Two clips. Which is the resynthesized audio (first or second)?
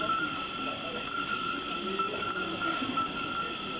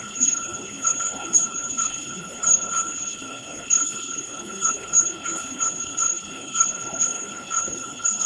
second